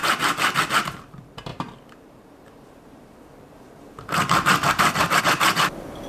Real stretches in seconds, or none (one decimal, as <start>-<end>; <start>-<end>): 0.0-1.5; 5.2-6.1